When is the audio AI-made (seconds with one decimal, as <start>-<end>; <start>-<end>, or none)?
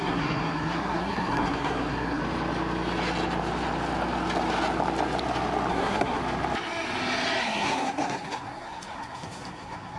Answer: 0.0-2.2; 5.7-6.2; 7.4-10.0